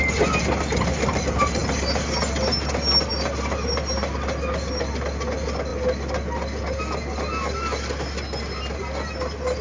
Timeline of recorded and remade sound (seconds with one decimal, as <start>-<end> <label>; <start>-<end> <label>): 0.0-9.6 recorded